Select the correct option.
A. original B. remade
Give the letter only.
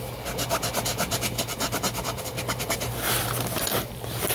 A